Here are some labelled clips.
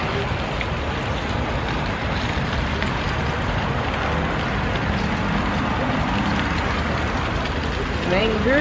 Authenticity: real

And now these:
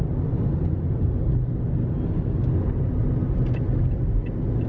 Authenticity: real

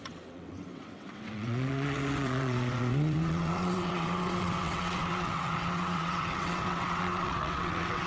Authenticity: fake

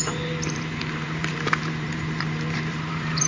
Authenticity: fake